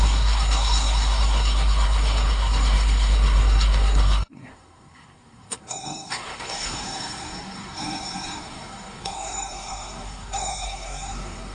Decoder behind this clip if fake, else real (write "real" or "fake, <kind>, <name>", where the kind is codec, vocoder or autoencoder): fake, codec, SNAC